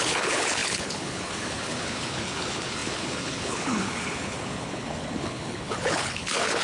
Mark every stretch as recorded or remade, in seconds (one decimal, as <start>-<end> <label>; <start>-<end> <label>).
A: 0.0-6.6 remade